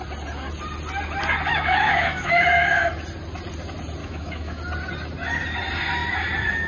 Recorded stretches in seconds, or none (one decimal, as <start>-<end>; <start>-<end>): 0.0-1.5; 2.9-4.0; 4.6-6.7

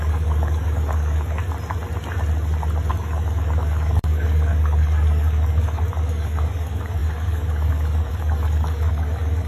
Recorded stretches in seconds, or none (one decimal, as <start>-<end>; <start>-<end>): 1.4-2.9

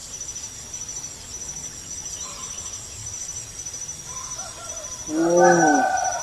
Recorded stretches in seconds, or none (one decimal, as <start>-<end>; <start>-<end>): 0.0-6.2

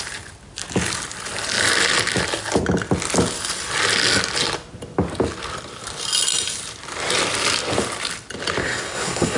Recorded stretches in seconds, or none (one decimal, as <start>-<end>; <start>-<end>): 0.0-8.6